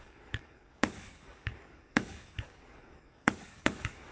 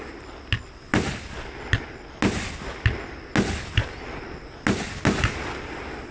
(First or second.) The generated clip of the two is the first